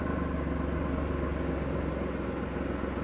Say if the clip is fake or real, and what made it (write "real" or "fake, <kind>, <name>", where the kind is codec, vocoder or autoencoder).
real